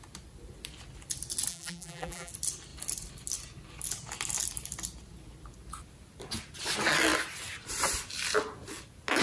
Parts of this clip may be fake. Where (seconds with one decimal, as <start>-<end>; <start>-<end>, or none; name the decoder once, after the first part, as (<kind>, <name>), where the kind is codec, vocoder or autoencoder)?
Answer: 1.5-2.3 (vocoder, BigVGAN v2)